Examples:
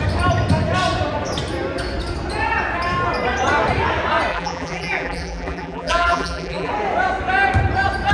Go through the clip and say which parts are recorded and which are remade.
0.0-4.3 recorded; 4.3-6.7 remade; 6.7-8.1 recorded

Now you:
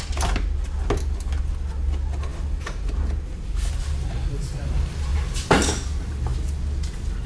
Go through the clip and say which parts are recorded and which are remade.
0.0-5.1 recorded; 5.1-5.7 remade; 5.7-7.3 recorded

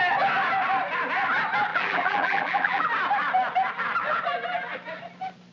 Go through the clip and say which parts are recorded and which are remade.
0.0-1.7 recorded; 1.7-2.9 remade; 2.9-5.5 recorded

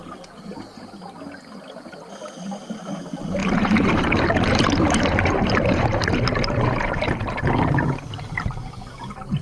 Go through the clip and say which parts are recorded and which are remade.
0.0-3.4 recorded; 3.4-7.6 remade; 7.6-9.4 recorded